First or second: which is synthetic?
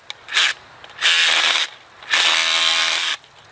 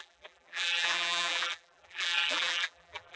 second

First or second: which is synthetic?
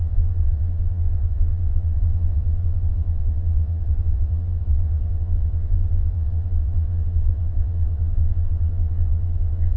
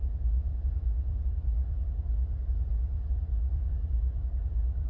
first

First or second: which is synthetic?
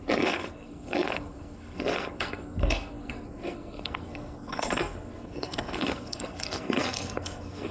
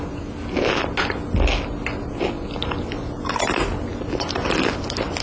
first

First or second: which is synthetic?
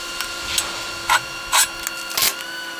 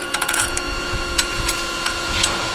second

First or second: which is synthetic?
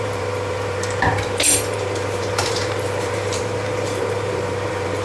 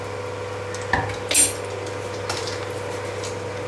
first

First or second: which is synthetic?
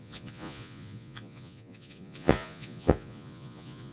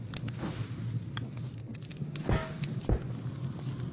first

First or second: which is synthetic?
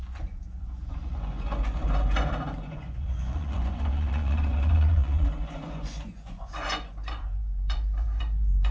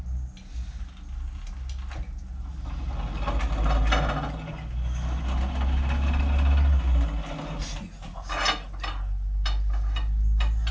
first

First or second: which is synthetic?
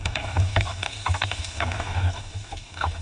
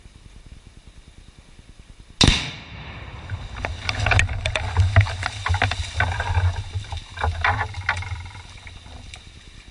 first